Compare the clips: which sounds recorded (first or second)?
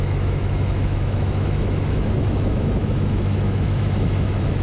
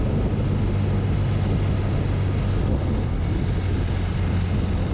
second